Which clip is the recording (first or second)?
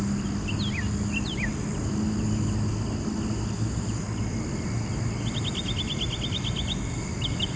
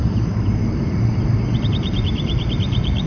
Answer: first